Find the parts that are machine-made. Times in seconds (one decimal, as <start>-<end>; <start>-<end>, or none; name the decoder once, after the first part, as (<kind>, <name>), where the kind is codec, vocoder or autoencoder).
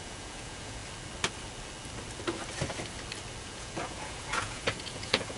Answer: 0.0-0.8 (vocoder, Vocos); 3.4-5.4